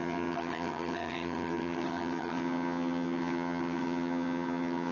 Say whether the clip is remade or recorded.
remade